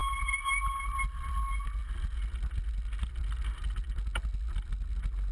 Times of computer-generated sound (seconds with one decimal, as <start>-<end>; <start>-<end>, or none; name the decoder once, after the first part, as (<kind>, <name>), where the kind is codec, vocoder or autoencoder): none